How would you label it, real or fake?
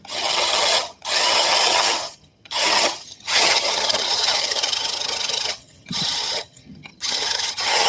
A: fake